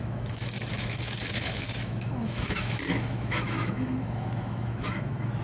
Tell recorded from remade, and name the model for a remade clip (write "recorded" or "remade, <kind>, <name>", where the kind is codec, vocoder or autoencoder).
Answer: remade, autoencoder, DAC-VAE